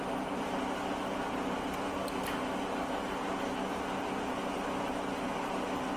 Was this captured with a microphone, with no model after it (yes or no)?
yes